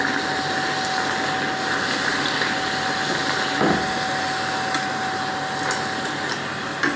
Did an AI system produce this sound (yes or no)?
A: no